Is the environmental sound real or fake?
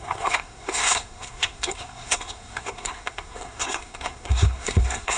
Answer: fake